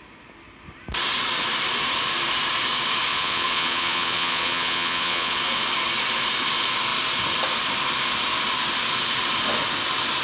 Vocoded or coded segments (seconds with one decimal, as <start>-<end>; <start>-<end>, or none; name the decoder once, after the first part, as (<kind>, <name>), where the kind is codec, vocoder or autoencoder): 3.1-5.4 (vocoder, Vocos)